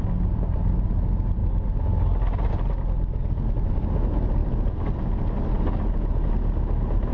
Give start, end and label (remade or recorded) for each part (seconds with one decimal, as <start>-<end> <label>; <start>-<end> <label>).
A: 0.0-7.1 recorded